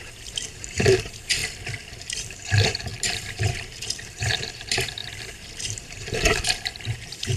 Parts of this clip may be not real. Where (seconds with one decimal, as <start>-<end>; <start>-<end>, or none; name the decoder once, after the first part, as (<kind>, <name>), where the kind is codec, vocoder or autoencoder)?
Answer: 0.0-1.4 (vocoder, BigVGAN v2); 2.2-7.4